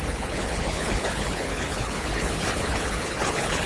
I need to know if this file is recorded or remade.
remade